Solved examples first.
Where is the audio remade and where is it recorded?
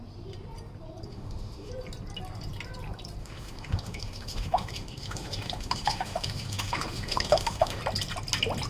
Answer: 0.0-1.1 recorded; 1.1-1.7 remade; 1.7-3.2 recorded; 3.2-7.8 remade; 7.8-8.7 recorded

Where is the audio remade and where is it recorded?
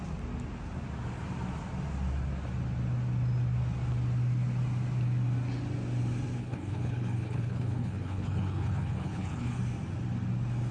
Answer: 0.0-6.4 recorded; 6.4-9.6 remade; 9.6-10.7 recorded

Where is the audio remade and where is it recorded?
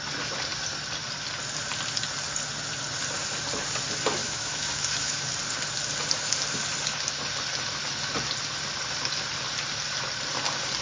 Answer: 0.0-4.2 recorded; 4.2-5.3 remade; 5.3-10.8 recorded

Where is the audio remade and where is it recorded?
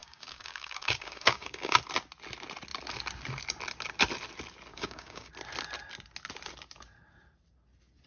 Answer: 0.0-1.8 remade; 1.8-4.7 recorded; 4.7-5.3 remade; 5.3-8.1 recorded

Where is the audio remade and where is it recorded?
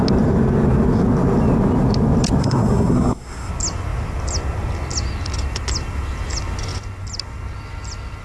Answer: 0.0-2.4 recorded; 2.4-3.5 remade; 3.5-8.2 recorded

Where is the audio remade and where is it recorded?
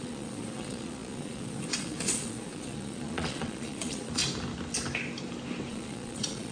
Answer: 0.0-4.2 remade; 4.2-5.7 recorded; 5.7-6.5 remade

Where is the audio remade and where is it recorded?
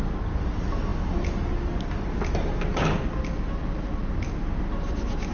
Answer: 0.0-5.3 recorded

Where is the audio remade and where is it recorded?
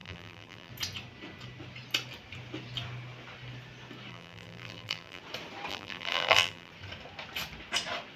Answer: 0.0-0.7 remade; 0.7-4.1 recorded; 4.1-5.2 remade; 5.2-5.7 recorded; 5.7-6.7 remade; 6.7-8.2 recorded